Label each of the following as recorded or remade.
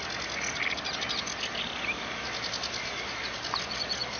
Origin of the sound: recorded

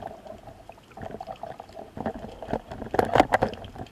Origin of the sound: recorded